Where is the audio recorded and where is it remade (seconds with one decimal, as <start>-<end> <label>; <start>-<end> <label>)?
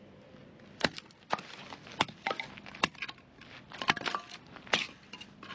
0.0-5.5 recorded